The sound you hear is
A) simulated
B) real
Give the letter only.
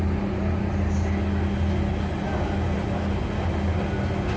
B